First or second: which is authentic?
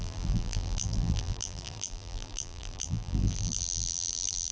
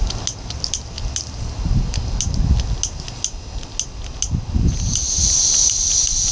second